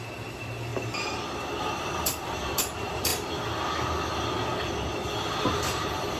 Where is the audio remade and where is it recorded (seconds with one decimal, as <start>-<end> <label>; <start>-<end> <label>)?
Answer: 0.0-0.7 remade; 0.7-1.6 recorded; 1.6-3.1 remade; 3.1-5.5 recorded; 5.5-6.2 remade